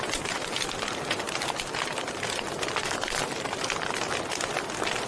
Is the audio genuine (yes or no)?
yes